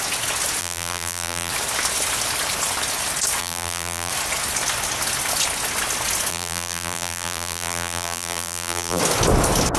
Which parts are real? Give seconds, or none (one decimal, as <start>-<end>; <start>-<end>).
0.0-0.6; 1.5-3.4; 4.1-6.3; 9.0-9.8